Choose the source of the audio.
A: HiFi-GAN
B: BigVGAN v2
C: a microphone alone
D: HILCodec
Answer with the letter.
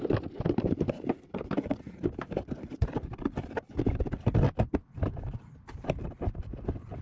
C